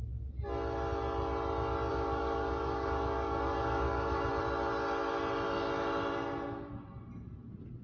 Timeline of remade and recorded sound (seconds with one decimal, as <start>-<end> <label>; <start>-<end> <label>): 0.0-1.9 recorded; 1.9-4.3 remade; 4.3-7.8 recorded